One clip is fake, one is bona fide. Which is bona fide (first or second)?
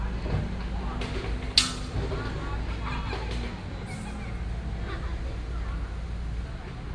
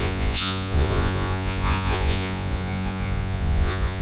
first